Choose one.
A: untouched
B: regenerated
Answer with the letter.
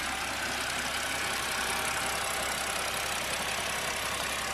A